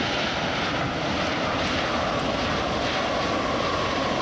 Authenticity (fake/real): real